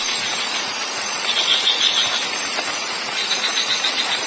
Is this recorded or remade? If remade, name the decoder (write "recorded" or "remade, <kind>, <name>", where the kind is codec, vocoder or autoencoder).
remade, vocoder, Vocos